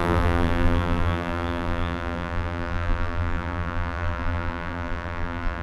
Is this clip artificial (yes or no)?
yes